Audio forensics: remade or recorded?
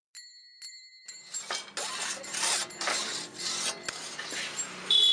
recorded